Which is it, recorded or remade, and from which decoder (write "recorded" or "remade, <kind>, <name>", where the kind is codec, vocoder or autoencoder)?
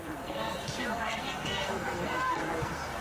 remade, codec, SNAC